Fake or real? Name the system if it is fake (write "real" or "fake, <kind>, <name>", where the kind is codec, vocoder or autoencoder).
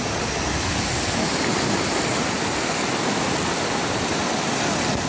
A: real